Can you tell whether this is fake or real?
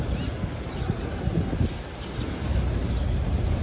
real